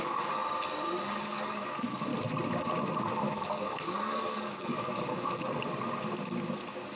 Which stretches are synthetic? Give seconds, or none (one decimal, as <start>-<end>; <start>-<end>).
0.0-0.4; 1.0-2.1; 3.2-5.4